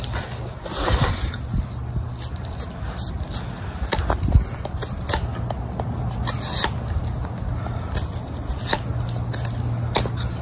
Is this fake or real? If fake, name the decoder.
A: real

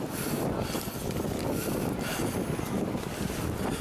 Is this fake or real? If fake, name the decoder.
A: real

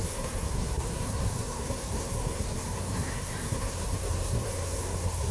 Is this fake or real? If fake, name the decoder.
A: fake, codec, SNAC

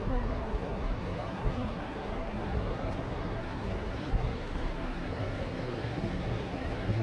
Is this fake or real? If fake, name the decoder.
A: fake, codec, SNAC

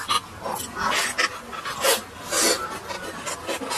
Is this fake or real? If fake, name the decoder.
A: real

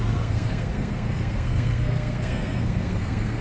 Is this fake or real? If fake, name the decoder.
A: fake, codec, SNAC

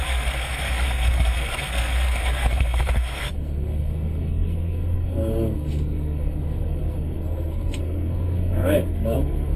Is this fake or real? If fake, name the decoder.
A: fake, codec, SNAC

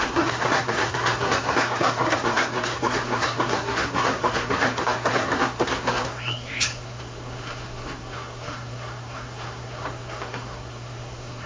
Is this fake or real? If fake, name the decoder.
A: fake, codec, SNAC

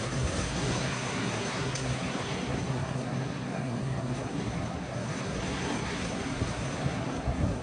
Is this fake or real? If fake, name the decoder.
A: fake, codec, SNAC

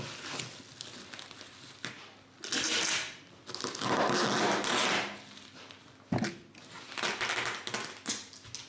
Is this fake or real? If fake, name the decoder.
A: real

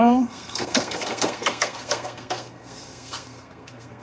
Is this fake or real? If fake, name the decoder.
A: fake, codec, SNAC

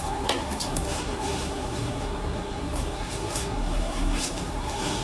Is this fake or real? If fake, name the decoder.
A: fake, codec, SNAC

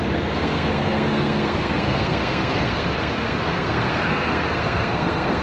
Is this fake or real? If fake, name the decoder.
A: fake, codec, SNAC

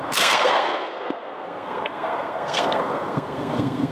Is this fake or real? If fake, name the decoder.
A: fake, codec, SNAC